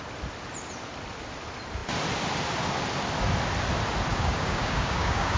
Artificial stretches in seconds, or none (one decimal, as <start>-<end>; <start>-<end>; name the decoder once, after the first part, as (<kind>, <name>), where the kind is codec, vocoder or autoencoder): 4.1-5.4 (codec, DAC)